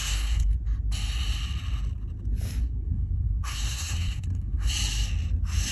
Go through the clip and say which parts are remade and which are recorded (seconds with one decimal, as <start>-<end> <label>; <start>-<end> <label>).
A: 0.0-0.5 remade; 0.5-2.6 recorded; 2.6-4.7 remade; 4.7-5.7 recorded